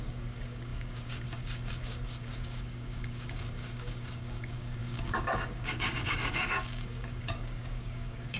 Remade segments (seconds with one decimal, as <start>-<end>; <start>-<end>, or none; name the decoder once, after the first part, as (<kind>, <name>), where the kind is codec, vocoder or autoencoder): 0.0-8.4 (codec, DAC)